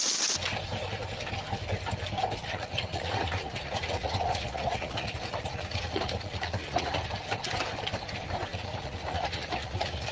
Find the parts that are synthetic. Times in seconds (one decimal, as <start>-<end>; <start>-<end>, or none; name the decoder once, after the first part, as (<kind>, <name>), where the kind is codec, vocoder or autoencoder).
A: 2.4-7.1 (vocoder, Vocos); 8.5-10.1